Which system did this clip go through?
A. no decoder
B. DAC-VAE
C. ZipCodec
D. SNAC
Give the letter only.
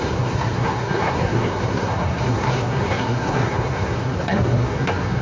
D